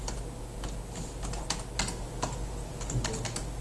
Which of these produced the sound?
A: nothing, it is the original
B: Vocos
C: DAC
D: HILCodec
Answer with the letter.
A